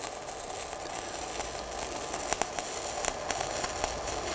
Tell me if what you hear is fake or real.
real